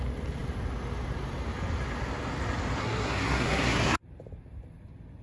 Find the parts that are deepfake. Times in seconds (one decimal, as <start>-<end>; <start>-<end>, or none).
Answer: 2.8-4.0